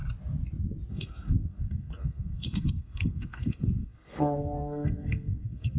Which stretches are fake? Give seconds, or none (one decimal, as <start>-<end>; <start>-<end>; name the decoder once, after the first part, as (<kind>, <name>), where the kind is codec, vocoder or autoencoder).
0.9-5.8 (codec, SNAC)